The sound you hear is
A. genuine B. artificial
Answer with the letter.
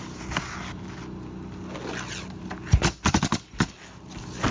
A